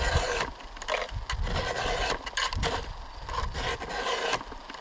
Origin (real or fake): real